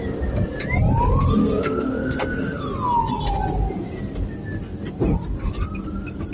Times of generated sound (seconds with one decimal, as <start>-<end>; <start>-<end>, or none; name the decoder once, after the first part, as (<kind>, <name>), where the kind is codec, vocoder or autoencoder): 1.4-2.6 (codec, SNAC)